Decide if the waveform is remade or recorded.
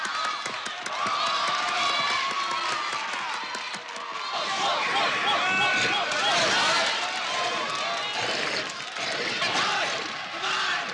recorded